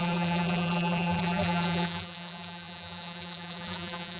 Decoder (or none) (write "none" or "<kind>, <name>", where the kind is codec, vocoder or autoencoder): vocoder, BigVGAN v2